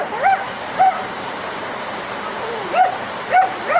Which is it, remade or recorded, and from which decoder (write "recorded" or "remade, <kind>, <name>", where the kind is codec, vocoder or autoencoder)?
remade, vocoder, BigVGAN v2